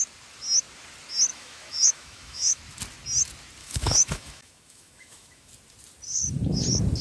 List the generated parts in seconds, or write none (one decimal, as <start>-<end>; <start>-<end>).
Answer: 1.3-2.6; 3.6-5.5